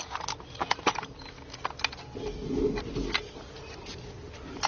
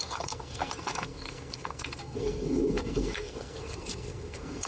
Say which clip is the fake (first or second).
second